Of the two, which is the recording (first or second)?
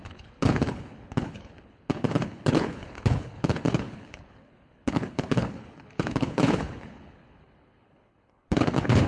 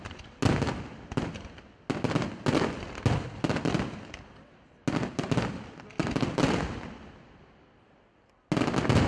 second